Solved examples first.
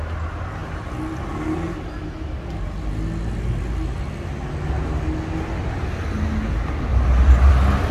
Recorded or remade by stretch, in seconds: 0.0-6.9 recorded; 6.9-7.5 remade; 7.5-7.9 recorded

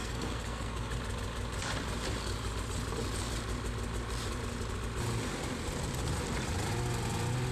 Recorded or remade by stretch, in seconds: 0.0-0.9 remade; 0.9-7.5 recorded

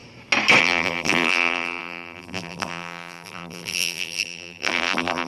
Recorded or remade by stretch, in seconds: 0.0-0.6 recorded; 0.6-5.3 remade

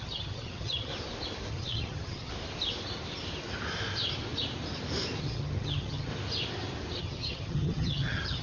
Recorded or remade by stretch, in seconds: 0.0-0.9 remade; 0.9-1.5 recorded; 1.5-2.3 remade; 2.3-5.2 recorded; 5.2-6.1 remade; 6.1-7.0 recorded; 7.0-8.4 remade

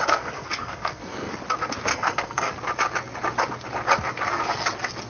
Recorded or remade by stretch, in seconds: 0.0-1.3 remade; 1.3-1.9 recorded; 1.9-2.5 remade; 2.5-5.1 recorded

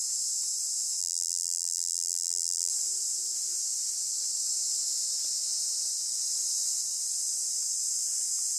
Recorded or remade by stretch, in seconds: 0.0-1.0 recorded; 1.0-2.7 remade; 2.7-8.6 recorded